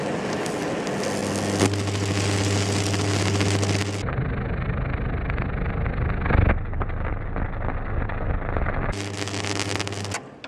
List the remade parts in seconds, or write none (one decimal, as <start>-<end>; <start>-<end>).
none